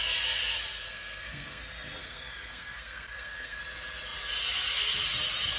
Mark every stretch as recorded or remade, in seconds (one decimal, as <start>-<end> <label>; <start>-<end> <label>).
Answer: 0.0-0.9 recorded; 0.9-1.6 remade; 1.6-2.0 recorded; 2.0-3.6 remade; 3.6-5.6 recorded